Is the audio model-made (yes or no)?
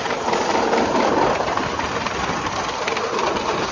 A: no